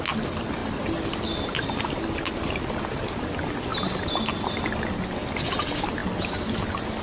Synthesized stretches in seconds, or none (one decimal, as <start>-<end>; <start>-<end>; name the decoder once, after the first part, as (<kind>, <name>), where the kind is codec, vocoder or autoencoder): none